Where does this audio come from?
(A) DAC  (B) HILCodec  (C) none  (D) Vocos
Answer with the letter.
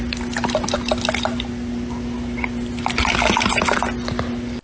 C